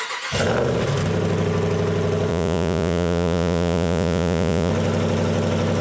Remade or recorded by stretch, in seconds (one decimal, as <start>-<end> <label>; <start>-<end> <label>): 0.0-2.3 recorded; 2.3-4.7 remade; 4.7-5.8 recorded